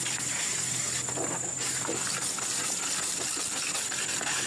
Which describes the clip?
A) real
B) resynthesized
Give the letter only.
A